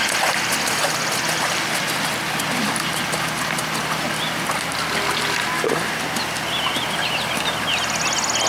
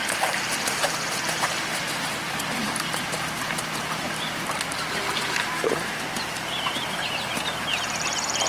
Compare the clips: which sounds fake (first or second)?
second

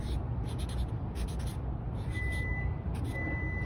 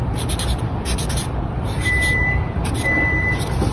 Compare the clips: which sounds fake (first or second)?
second